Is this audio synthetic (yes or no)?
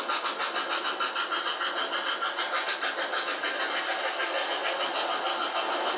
no